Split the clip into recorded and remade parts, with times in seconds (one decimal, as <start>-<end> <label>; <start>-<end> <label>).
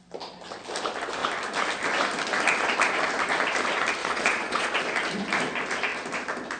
0.0-4.0 recorded; 4.0-4.8 remade; 4.8-6.6 recorded